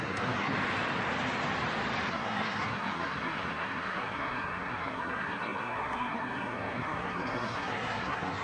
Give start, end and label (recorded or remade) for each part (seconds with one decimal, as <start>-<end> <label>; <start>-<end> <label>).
0.0-0.5 remade; 0.5-2.1 recorded; 2.1-8.4 remade